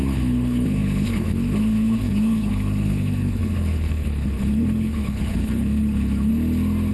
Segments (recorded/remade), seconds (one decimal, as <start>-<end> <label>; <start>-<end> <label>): 0.0-6.3 remade; 6.3-6.9 recorded